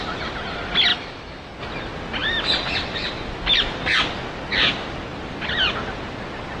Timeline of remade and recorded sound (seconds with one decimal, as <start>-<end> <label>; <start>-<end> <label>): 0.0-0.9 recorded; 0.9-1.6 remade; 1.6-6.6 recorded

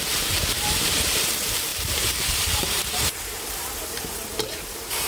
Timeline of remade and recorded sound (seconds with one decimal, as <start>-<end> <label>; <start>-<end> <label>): 0.0-5.1 remade

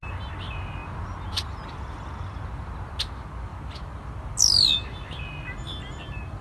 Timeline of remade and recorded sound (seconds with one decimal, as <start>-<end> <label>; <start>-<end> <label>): 0.0-6.4 recorded

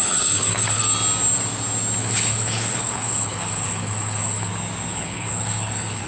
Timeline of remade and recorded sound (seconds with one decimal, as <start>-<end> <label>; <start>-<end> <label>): 0.0-0.8 remade; 0.8-2.0 recorded; 2.0-4.5 remade; 4.5-4.9 recorded; 4.9-6.1 remade

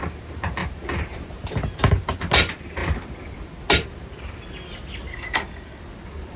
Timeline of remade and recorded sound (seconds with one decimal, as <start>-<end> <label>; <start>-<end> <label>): 0.0-5.1 recorded; 5.1-5.8 remade; 5.8-6.4 recorded

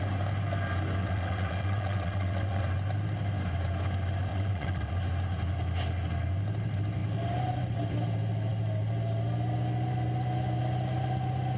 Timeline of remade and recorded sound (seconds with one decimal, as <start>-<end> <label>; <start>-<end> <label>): 0.0-1.0 recorded; 1.0-2.6 remade; 2.6-4.3 recorded; 4.3-4.9 remade; 4.9-11.6 recorded